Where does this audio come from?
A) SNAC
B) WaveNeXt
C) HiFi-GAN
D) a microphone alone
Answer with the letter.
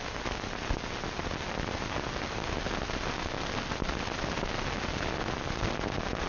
D